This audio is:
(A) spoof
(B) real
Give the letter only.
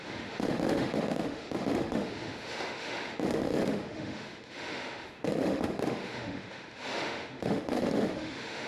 A